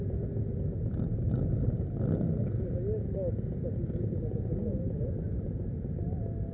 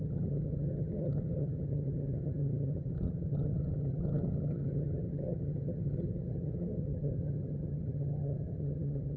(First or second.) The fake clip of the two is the second